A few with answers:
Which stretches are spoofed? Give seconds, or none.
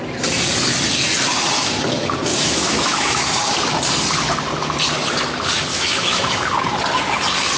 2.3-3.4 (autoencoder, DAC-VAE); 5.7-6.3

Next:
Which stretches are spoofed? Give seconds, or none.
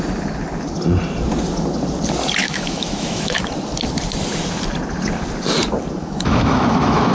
2.4-3.5 (autoencoder, DAC-VAE); 6.0-7.1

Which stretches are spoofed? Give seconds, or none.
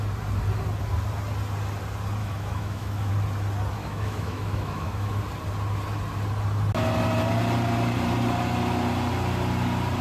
2.2-3.1 (autoencoder, DAC-VAE); 3.8-5.2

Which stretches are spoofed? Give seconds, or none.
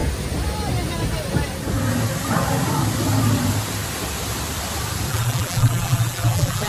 5.1-6.7 (vocoder, BigVGAN v2)